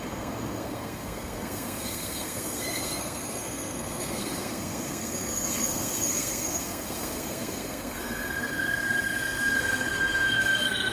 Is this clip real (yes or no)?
no